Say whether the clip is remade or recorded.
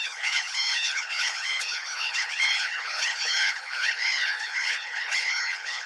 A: remade